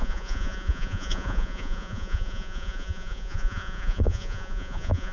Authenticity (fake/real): fake